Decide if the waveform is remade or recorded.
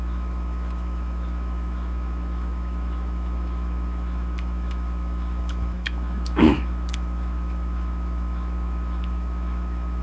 remade